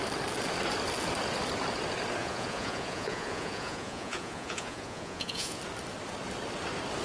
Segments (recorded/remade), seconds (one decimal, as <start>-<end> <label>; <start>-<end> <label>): 0.0-2.2 recorded; 2.2-5.6 remade; 5.6-7.0 recorded